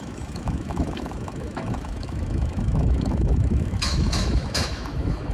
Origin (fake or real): fake